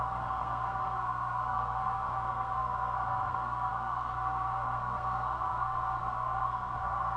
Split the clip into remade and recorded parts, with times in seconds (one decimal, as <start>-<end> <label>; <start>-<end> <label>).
0.0-7.2 remade